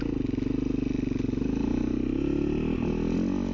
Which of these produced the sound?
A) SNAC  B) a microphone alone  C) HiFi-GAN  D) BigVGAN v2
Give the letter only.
B